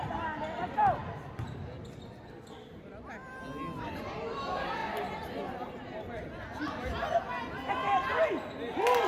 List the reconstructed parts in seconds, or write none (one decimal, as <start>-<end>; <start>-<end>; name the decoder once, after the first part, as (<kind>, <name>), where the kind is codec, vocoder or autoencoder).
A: none